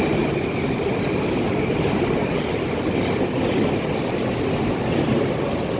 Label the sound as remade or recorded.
recorded